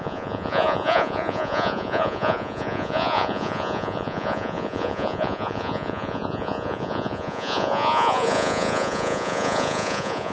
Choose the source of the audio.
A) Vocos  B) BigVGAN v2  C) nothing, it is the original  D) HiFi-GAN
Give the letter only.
A